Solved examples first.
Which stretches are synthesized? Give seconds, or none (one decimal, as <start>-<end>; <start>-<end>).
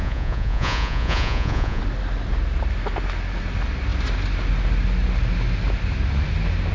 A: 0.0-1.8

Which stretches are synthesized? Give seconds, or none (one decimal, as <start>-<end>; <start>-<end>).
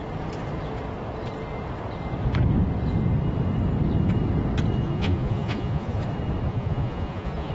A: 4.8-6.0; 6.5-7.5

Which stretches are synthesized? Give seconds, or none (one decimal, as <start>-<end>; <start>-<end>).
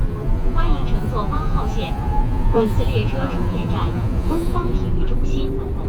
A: 0.0-4.9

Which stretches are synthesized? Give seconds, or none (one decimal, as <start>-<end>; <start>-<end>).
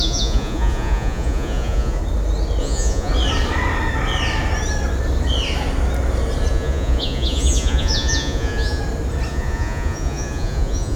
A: 0.0-2.0; 2.6-3.1; 6.5-8.8; 9.3-11.0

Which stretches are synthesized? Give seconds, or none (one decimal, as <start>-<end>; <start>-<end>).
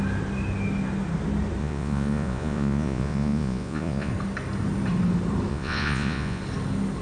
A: 1.6-4.1; 5.5-6.4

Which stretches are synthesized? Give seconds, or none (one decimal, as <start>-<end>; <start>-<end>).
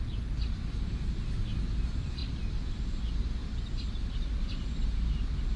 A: none